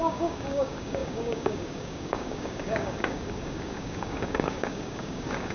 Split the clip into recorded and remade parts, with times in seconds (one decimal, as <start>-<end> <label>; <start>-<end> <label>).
0.0-5.5 remade